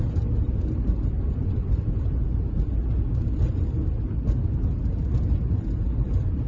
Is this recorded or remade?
remade